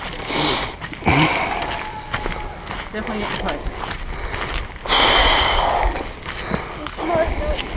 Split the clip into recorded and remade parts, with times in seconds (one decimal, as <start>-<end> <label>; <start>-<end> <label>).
0.0-5.2 recorded; 5.2-5.7 remade; 5.7-7.8 recorded